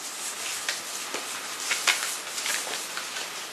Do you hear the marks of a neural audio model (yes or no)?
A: no